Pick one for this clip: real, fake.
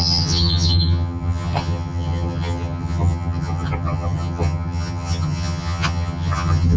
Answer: fake